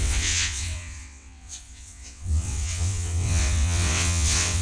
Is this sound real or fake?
fake